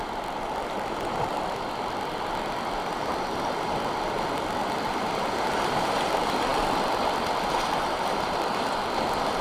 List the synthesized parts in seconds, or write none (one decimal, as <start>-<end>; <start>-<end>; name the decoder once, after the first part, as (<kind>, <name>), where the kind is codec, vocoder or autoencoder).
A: 4.9-6.1 (vocoder, BigVGAN v2)